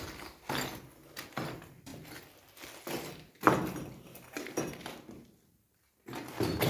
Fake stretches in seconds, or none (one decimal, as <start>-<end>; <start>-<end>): none